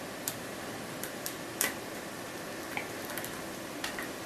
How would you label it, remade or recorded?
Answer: recorded